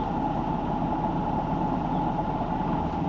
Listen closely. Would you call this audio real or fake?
real